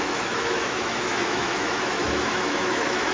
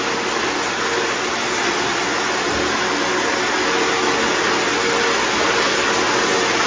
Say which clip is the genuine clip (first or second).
second